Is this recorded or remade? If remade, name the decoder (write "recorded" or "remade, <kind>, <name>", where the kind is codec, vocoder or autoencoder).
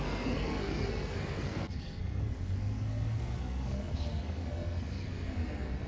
remade, codec, SNAC